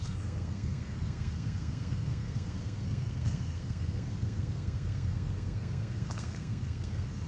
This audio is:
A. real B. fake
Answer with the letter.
B